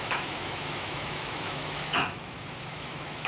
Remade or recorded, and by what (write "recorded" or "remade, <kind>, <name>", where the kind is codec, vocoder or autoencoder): remade, autoencoder, DAC-VAE